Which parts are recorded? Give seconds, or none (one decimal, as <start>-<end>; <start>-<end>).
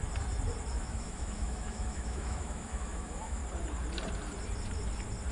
0.0-0.7; 3.4-5.3